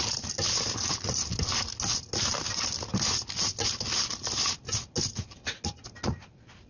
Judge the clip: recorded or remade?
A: recorded